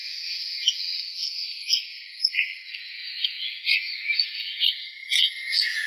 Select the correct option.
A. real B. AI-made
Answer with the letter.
B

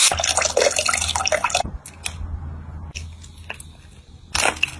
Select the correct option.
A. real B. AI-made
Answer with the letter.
A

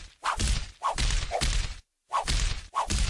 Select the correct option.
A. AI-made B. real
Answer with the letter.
B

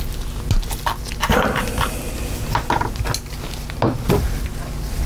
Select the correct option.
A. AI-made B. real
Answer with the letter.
B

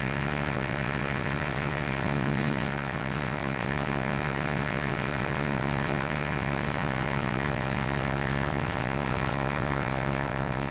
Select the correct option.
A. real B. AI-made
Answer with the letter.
B